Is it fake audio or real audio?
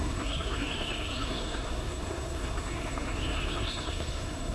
fake